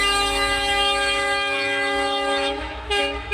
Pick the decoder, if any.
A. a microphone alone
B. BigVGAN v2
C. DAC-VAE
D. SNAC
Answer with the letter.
C